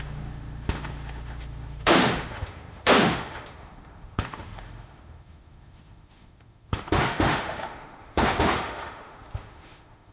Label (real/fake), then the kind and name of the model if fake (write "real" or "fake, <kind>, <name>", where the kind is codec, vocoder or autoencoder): fake, autoencoder, DAC-VAE